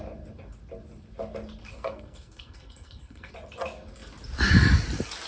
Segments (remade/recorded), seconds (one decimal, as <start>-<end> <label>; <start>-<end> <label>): 0.0-1.6 recorded; 1.6-3.3 remade; 3.3-5.3 recorded